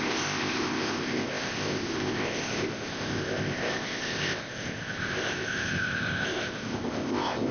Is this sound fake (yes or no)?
yes